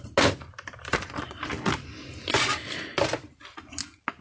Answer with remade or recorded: recorded